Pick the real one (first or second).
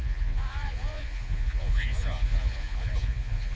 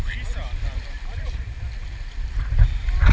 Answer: second